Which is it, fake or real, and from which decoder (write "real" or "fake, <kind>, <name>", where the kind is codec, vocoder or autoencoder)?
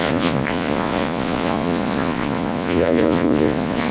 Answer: fake, vocoder, Vocos